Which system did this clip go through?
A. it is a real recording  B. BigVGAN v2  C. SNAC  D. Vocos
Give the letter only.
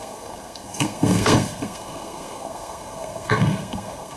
C